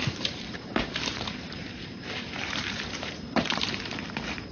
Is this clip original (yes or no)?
no